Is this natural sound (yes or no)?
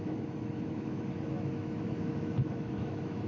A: no